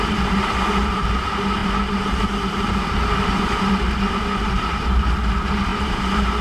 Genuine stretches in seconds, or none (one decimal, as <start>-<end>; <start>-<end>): none